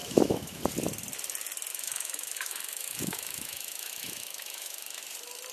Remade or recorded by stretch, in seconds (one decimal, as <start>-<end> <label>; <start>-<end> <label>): 0.0-0.6 remade; 0.6-1.7 recorded; 1.7-5.0 remade; 5.0-5.5 recorded